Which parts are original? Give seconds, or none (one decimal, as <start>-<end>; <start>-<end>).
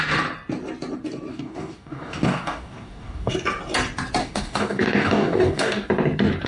0.0-1.3; 3.3-4.2; 5.9-6.5